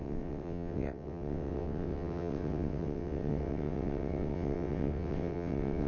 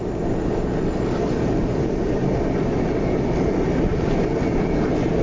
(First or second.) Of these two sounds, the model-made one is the first